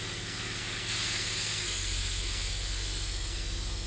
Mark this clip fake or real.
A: fake